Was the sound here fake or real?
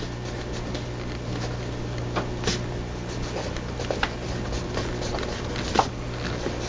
real